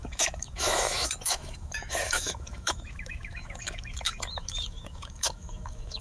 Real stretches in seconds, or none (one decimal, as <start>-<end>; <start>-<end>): none